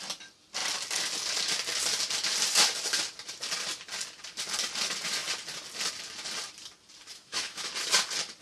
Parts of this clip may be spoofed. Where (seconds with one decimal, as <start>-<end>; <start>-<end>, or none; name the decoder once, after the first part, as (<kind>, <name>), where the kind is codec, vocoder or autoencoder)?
7.1-7.7 (autoencoder, DAC-VAE)